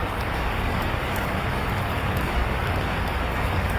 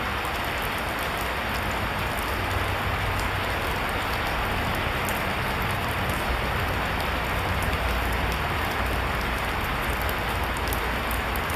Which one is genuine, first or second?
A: second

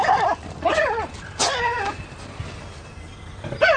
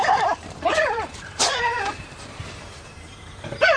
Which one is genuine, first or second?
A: first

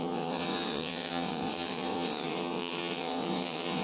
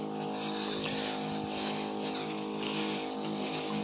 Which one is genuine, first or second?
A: second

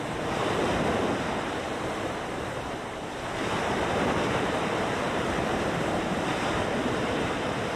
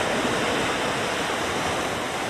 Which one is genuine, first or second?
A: second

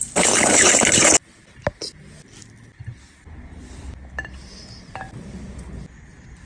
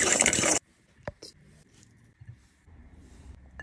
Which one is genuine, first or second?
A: first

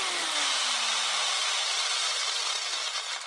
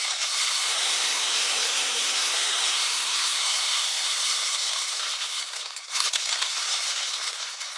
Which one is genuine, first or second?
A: first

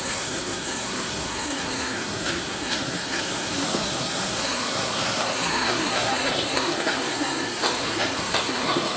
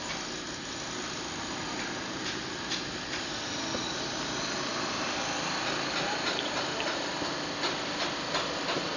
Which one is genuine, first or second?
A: second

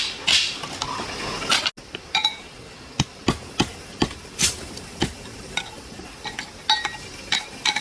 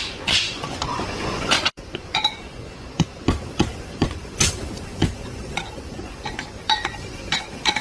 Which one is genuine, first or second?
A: first